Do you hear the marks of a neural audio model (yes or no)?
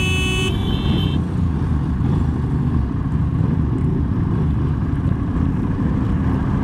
no